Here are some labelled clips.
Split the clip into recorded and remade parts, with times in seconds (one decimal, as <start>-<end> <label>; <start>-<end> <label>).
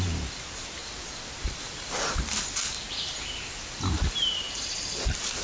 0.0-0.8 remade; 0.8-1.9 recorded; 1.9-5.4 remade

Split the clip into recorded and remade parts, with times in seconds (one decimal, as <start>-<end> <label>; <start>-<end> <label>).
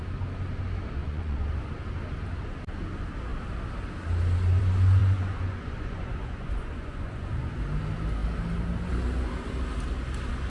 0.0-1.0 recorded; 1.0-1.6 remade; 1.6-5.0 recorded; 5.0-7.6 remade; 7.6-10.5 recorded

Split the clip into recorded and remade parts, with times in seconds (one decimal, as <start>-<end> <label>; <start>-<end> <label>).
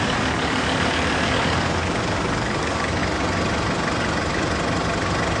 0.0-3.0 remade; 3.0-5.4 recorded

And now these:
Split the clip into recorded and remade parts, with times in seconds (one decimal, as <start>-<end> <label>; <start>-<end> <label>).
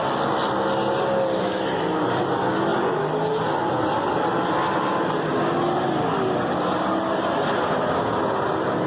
0.0-8.9 recorded